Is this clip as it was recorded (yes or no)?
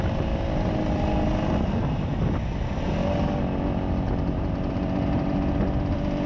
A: yes